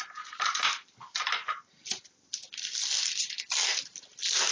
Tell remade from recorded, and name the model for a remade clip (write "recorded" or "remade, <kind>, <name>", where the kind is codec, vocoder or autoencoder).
recorded